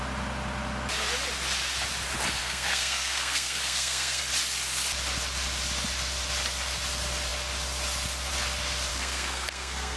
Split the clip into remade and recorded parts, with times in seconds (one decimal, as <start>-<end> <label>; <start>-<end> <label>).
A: 0.0-2.4 recorded; 2.4-4.2 remade; 4.2-8.9 recorded; 8.9-10.0 remade